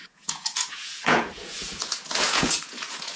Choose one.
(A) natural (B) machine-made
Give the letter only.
B